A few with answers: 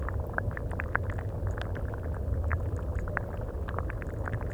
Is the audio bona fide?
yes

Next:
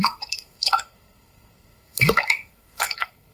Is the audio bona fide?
no